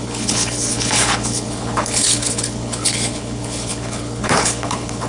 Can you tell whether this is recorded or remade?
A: remade